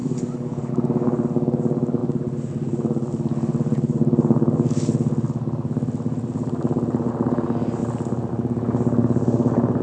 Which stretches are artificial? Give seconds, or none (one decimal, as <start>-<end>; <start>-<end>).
0.0-0.7